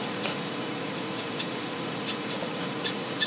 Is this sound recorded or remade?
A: remade